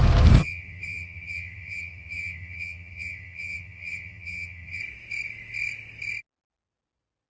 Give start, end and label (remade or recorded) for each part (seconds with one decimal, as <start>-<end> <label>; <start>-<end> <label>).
0.0-0.4 recorded; 0.4-4.8 remade; 4.8-7.3 recorded